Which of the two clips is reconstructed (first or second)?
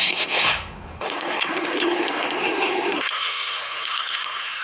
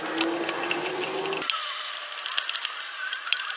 first